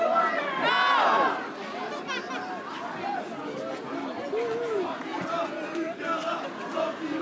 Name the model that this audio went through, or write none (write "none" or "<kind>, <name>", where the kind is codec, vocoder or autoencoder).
none